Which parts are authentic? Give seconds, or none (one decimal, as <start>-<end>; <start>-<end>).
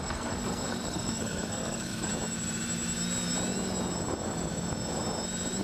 2.1-5.6